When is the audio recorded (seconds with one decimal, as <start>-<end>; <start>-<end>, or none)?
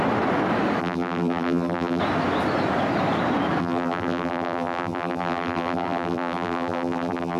0.0-0.8; 2.0-3.6